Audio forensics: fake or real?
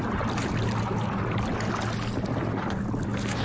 real